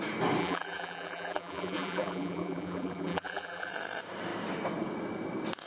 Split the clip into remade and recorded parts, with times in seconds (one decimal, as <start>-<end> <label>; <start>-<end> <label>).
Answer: 0.0-0.4 recorded; 0.4-3.7 remade; 3.7-5.7 recorded